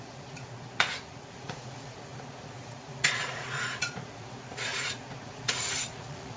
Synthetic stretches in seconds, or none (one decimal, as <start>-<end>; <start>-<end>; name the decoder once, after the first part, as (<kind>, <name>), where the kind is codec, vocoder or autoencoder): 0.0-6.4 (vocoder, Vocos)